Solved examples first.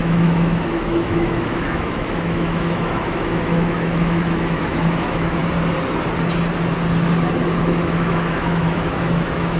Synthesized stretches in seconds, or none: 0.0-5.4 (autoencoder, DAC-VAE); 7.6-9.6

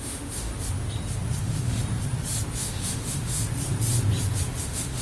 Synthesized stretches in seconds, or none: 0.0-0.5 (autoencoder, DAC-VAE); 1.4-1.8; 2.6-3.4; 4.6-5.0

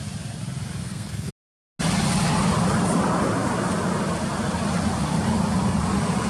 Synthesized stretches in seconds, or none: 0.8-1.3 (codec, SNAC)

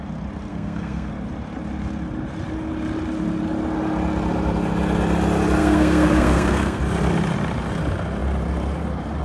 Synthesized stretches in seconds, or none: 0.5-1.1 (codec, SNAC); 5.6-6.8

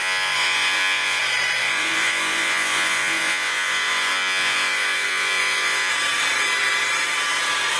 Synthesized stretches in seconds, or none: 0.0-1.2 (vocoder, Vocos); 1.6-5.9

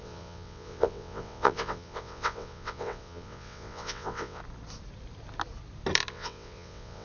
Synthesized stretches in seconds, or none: 0.0-4.4 (vocoder, WaveNeXt); 6.1-7.0

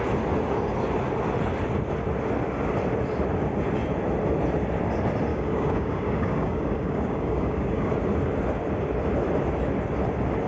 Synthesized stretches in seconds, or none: 5.3-7.9 (codec, DAC)

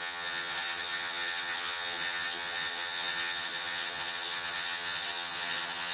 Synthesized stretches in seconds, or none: 0.0-5.9 (vocoder, HiFi-GAN)